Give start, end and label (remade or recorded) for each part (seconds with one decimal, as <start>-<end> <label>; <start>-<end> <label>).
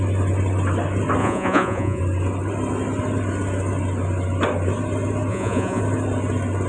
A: 0.0-1.2 recorded; 1.2-2.0 remade; 2.0-5.3 recorded; 5.3-5.8 remade; 5.8-6.7 recorded